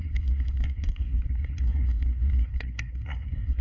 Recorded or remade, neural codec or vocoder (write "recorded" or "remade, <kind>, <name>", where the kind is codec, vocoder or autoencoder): remade, codec, SNAC